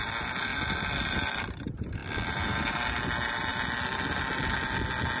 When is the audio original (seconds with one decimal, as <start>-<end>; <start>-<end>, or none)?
0.0-5.2